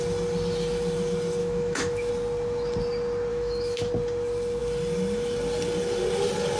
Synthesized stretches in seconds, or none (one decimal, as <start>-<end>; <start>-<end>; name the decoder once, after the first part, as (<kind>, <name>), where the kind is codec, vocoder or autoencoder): 1.4-2.1 (autoencoder, DAC-VAE); 3.3-3.9